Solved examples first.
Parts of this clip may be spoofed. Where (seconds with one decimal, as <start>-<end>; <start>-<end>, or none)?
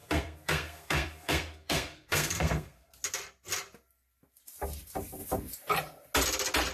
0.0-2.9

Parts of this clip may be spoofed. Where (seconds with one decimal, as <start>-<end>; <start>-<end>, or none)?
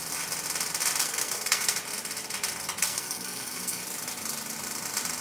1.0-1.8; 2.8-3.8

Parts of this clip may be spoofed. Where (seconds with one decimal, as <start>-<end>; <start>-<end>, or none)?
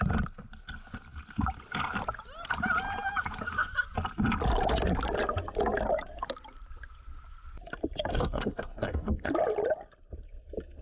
8.1-9.3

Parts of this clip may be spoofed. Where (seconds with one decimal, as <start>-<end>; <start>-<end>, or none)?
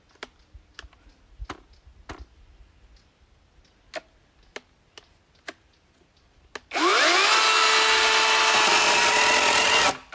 none